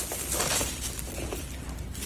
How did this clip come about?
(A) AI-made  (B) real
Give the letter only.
B